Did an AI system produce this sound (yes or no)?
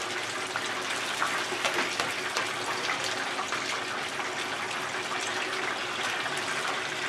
no